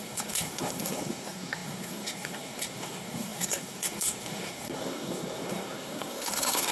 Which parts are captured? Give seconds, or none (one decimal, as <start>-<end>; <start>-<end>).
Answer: none